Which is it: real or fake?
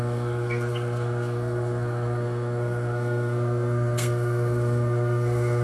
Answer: fake